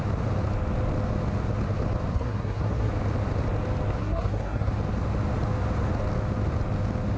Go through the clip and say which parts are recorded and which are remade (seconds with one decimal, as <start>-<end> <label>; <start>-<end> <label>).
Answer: 0.0-2.1 recorded; 2.1-2.9 remade; 2.9-4.0 recorded; 4.0-4.7 remade; 4.7-7.2 recorded